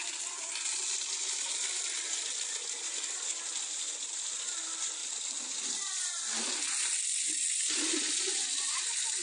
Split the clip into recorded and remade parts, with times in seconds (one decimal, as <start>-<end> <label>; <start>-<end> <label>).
0.0-9.2 recorded